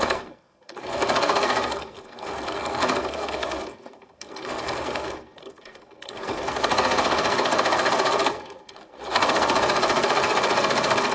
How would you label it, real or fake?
fake